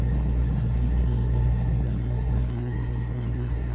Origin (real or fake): fake